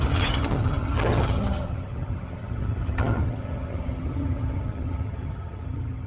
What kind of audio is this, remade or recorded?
remade